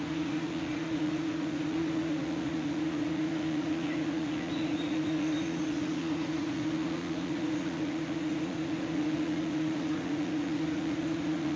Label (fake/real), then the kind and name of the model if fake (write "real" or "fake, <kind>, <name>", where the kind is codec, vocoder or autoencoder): fake, vocoder, Vocos